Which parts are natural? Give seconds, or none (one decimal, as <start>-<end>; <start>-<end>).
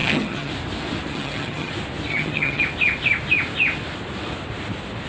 0.5-1.1; 1.7-2.1; 2.6-5.1